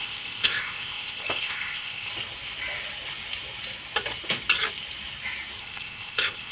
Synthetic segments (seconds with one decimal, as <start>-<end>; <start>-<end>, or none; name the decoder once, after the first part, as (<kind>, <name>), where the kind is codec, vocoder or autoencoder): 0.0-2.1 (codec, ZipCodec); 5.6-6.5